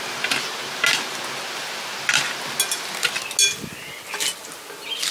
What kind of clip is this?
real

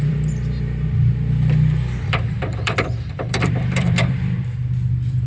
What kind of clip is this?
fake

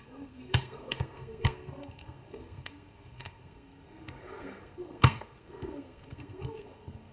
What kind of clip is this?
fake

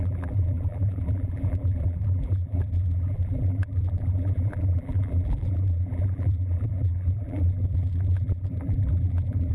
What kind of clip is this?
fake